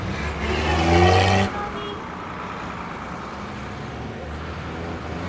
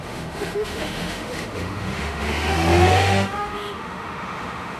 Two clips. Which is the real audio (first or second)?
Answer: first